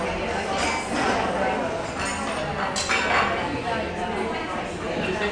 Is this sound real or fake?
real